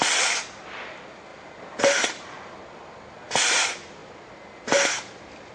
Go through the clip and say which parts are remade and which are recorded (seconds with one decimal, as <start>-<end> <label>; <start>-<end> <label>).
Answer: 0.0-1.3 recorded; 1.3-2.7 remade; 2.7-5.5 recorded